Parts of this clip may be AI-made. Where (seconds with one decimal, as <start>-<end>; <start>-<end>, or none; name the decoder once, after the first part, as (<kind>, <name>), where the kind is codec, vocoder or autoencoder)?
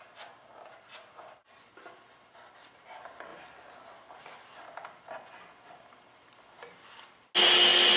none